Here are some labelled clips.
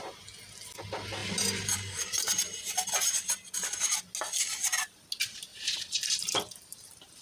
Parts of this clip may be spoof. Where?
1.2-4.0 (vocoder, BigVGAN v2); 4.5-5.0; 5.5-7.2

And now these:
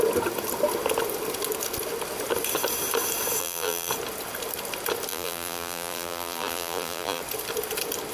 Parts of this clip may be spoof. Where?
3.4-3.9 (vocoder, BigVGAN v2); 5.1-7.2

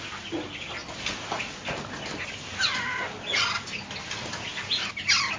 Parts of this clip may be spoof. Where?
none

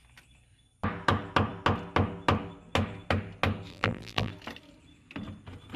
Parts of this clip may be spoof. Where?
3.7-4.3 (vocoder, BigVGAN v2)

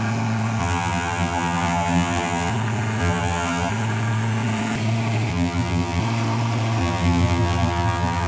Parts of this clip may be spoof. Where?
0.6-2.5 (vocoder, BigVGAN v2); 3.0-3.7; 5.3-6.0; 6.8-8.3